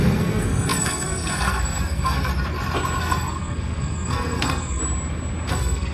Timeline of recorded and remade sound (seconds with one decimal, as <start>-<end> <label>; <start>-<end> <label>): 0.0-2.3 remade; 2.3-3.0 recorded; 3.0-4.8 remade; 4.8-5.5 recorded; 5.5-5.9 remade